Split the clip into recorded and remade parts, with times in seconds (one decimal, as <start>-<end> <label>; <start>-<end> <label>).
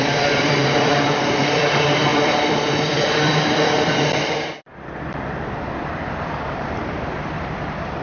0.0-8.0 remade